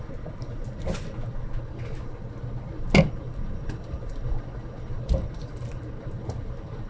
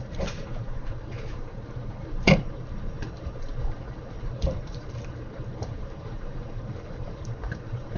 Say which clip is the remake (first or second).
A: second